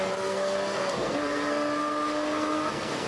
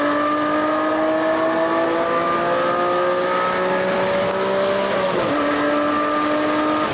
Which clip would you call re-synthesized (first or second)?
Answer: first